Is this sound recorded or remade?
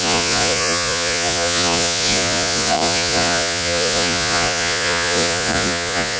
remade